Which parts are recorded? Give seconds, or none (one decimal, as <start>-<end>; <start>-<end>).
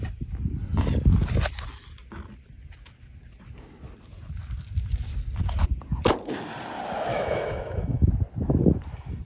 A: 0.0-7.1; 8.1-9.2